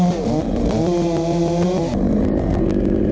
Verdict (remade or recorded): recorded